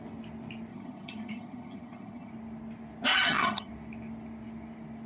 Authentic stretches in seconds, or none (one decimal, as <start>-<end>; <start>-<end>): 0.0-0.7; 2.3-3.1; 3.7-5.1

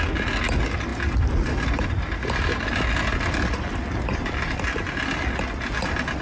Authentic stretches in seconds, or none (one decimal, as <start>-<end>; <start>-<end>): 0.0-6.2

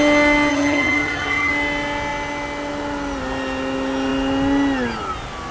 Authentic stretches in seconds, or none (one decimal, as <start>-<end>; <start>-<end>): 0.0-0.5; 1.5-5.5

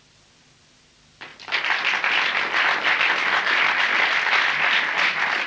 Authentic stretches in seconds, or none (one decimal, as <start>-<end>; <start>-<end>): 0.0-5.5

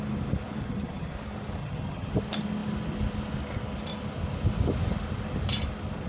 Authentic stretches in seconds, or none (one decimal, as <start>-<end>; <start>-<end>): 0.0-0.6; 1.1-1.6; 2.1-6.1